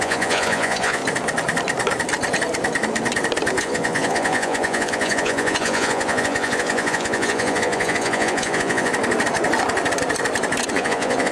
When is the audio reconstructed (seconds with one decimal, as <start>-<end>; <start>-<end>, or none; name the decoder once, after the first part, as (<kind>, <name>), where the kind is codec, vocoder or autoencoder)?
0.0-1.0 (vocoder, Vocos); 3.6-8.9; 10.7-11.3